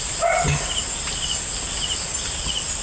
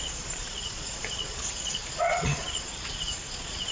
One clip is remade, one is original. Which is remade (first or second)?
second